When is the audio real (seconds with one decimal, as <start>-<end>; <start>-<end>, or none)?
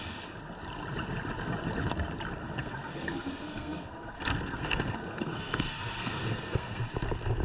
0.0-2.4; 6.8-7.4